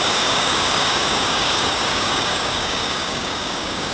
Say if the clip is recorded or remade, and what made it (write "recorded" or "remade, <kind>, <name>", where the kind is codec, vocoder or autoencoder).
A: remade, codec, DAC